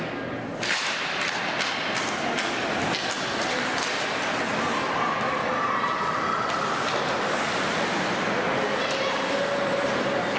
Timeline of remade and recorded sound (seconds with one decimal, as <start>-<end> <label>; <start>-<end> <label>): 0.0-10.4 recorded